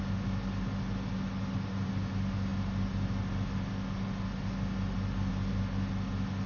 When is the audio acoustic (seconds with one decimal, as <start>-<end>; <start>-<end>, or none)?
0.0-6.5